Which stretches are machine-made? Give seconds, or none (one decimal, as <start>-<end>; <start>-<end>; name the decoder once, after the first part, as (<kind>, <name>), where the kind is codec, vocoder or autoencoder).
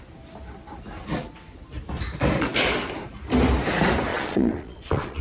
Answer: 4.1-5.2 (vocoder, Vocos)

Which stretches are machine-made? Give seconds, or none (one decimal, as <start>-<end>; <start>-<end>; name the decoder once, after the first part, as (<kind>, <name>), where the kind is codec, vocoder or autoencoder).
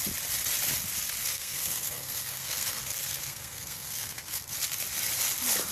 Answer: 1.2-4.4 (codec, SNAC)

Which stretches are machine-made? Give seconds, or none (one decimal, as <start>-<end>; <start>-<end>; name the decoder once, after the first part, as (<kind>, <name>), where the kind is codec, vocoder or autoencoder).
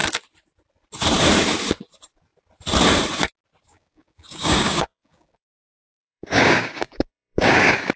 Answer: 3.7-8.0 (codec, DAC)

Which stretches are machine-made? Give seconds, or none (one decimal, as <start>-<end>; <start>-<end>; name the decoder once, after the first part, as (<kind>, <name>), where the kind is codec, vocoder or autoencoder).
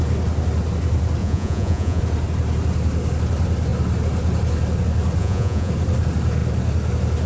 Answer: 1.2-2.0 (vocoder, Vocos); 5.2-5.7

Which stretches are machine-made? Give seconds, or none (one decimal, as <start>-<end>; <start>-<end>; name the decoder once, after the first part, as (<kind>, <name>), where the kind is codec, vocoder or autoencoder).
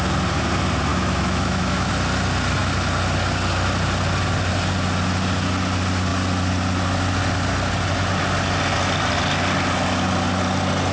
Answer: 0.9-1.9 (autoencoder, DAC-VAE)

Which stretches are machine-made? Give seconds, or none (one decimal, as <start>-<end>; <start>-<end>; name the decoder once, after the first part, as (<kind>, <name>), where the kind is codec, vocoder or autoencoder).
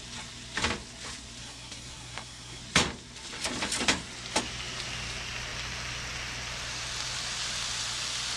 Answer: 1.4-2.6 (codec, SNAC)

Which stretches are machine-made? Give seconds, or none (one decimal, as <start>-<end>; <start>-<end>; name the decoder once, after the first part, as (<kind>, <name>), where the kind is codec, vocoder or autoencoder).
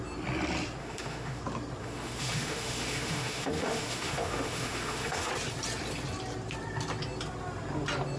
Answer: 0.8-1.4 (autoencoder, DAC-VAE); 1.8-5.3